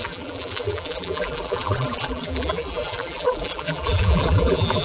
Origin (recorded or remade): remade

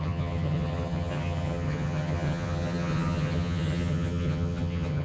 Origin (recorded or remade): remade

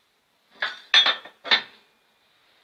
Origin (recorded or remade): recorded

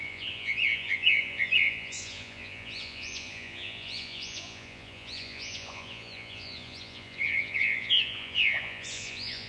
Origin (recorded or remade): remade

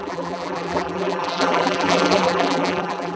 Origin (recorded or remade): remade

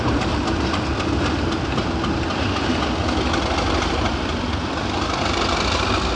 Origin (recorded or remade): recorded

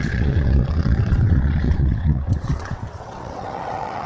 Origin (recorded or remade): remade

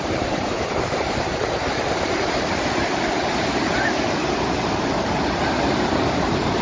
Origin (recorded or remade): remade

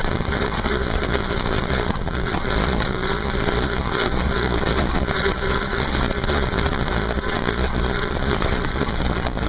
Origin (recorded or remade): remade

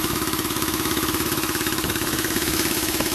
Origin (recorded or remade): remade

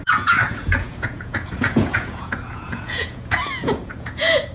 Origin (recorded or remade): remade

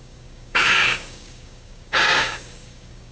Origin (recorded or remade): remade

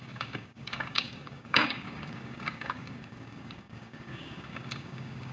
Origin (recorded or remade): remade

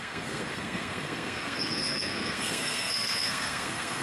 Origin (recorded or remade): remade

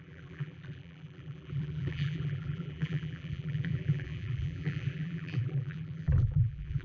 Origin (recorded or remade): remade